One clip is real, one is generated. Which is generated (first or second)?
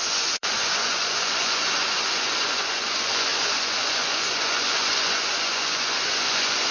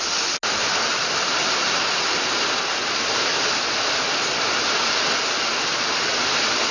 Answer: first